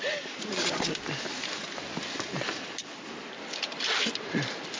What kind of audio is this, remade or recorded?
recorded